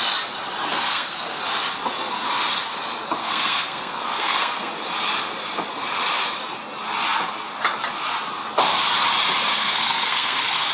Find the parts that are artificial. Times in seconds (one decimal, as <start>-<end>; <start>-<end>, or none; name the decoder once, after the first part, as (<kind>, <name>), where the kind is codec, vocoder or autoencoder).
0.7-1.4 (codec, SNAC); 3.2-4.7; 9.5-10.7